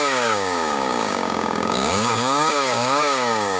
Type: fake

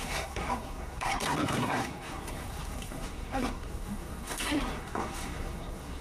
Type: fake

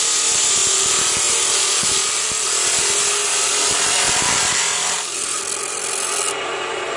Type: real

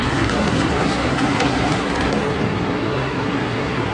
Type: fake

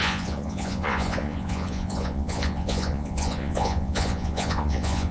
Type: fake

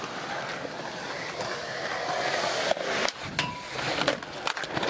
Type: real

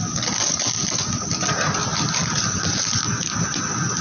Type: real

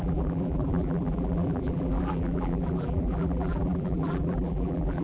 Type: fake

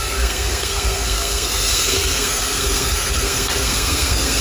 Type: fake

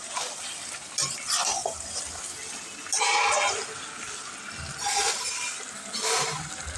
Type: real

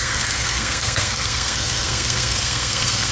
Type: fake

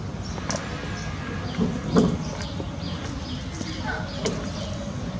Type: real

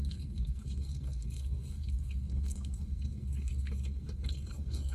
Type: fake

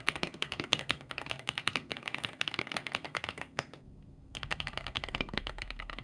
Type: fake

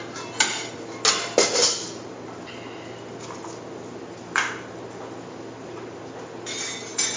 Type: real